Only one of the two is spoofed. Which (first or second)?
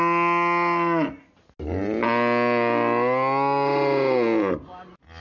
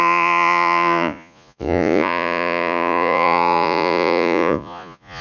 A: second